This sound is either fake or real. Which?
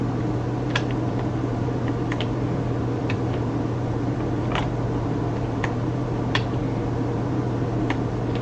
fake